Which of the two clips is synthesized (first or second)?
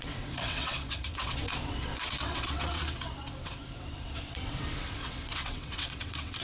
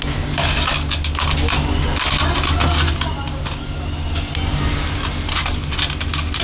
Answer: first